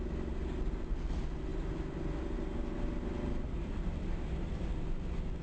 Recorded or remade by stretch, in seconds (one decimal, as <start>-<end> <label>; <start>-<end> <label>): 0.0-5.4 recorded

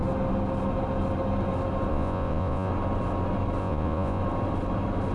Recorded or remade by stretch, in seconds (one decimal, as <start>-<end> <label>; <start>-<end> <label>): 0.0-1.9 recorded; 1.9-2.7 remade; 2.7-3.6 recorded; 3.6-4.2 remade; 4.2-5.1 recorded

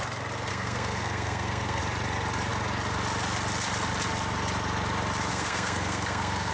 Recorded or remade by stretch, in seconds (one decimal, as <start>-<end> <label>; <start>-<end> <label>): 0.0-0.5 recorded; 0.5-1.8 remade; 1.8-5.3 recorded; 5.3-6.5 remade

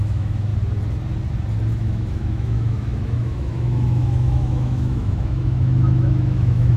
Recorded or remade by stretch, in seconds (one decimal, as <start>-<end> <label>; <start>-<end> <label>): 0.0-0.5 remade; 0.5-1.7 recorded; 1.7-6.8 remade